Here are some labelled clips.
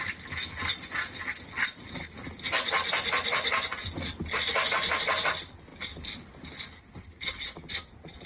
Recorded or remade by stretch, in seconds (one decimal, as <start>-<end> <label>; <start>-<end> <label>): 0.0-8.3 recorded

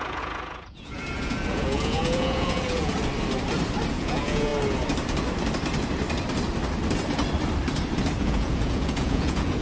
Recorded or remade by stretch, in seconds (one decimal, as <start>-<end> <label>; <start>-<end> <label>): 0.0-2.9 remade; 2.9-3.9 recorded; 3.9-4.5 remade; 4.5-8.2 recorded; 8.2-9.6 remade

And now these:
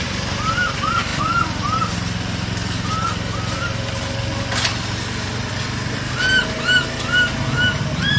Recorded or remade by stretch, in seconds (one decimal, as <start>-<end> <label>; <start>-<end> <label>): 0.0-8.2 recorded

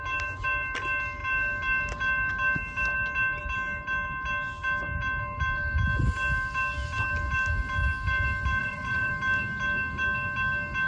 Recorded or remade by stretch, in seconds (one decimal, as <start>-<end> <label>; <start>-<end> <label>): 0.0-8.6 recorded; 8.6-9.1 remade; 9.1-10.9 recorded

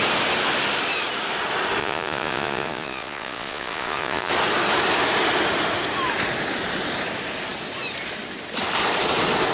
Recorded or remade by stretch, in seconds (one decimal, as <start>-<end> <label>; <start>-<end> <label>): 0.0-1.8 recorded; 1.8-4.3 remade; 4.3-9.5 recorded